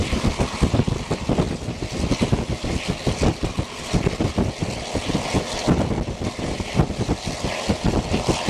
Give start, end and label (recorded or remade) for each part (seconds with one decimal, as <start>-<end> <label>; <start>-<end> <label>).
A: 0.0-8.5 recorded